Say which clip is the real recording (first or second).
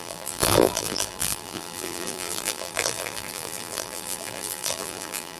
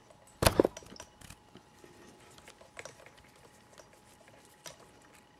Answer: second